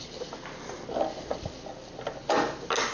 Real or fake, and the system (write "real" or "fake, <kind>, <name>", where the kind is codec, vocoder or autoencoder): real